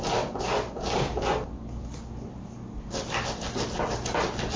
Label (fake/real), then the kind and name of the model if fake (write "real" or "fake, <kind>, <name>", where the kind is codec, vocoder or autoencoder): real